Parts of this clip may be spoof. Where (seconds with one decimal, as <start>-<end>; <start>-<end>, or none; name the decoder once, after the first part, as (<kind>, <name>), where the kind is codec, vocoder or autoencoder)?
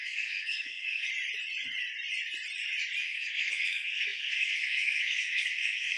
0.0-1.1 (codec, SNAC); 3.0-6.0